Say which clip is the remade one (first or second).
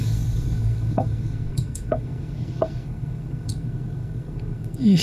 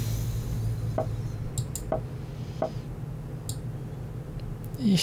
first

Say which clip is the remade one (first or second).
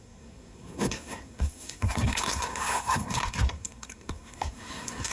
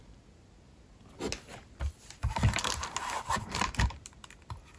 first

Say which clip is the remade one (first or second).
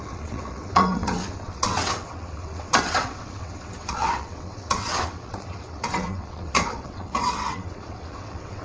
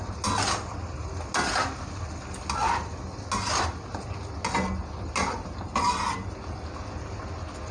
first